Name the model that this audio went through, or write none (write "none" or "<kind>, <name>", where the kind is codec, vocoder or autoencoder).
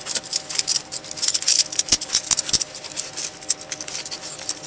none